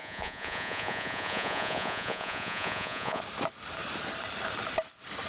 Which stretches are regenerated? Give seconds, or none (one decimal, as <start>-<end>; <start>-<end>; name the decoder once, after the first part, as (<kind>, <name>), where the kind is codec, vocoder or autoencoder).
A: 0.0-3.2 (vocoder, Vocos)